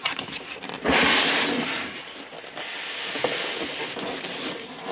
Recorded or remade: recorded